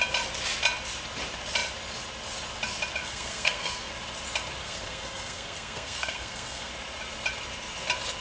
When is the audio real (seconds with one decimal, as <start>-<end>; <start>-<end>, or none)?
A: 0.0-3.0; 3.9-4.6; 6.7-8.2